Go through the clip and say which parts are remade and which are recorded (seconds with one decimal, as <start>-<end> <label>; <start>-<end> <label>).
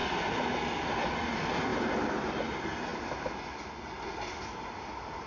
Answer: 0.0-5.3 recorded